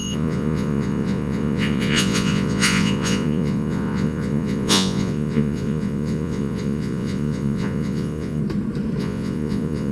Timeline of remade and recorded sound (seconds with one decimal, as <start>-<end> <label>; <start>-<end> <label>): 0.0-8.4 remade; 8.4-9.0 recorded; 9.0-9.9 remade